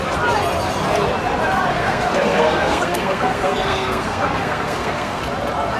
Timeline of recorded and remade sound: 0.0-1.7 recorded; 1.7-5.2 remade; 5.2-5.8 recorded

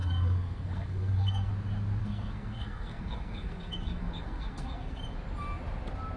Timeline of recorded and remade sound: 0.0-1.5 remade; 1.5-2.0 recorded; 2.0-5.0 remade; 5.0-6.2 recorded